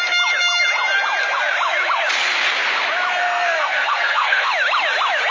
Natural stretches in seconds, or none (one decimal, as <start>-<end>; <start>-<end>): 0.0-3.2; 4.5-5.3